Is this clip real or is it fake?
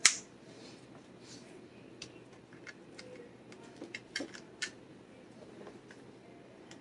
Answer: real